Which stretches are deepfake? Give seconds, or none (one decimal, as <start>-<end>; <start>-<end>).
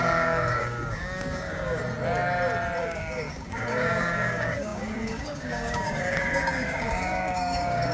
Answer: 0.0-1.8; 2.8-7.9